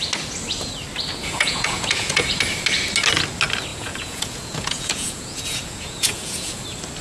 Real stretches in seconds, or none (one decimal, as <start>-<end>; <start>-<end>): 0.0-1.2; 2.3-3.7; 6.6-7.0